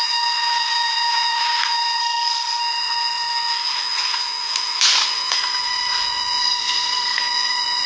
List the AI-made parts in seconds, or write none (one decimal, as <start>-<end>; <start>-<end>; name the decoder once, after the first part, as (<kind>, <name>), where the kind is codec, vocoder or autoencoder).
2.0-2.6 (codec, SNAC); 6.4-7.2